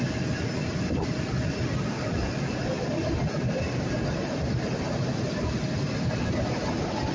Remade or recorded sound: recorded